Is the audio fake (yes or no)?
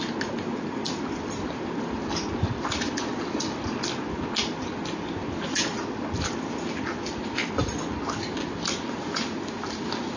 no